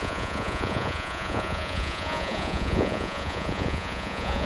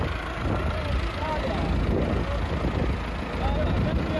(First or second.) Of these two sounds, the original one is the second